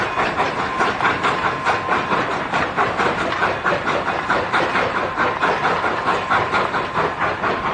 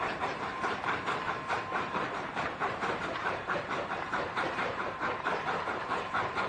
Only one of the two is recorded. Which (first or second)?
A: first